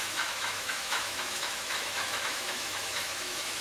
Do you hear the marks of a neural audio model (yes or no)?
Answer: yes